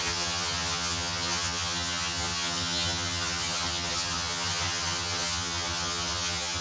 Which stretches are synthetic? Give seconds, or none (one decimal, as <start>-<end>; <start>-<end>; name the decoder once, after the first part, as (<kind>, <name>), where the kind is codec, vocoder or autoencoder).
0.0-6.6 (vocoder, HiFi-GAN)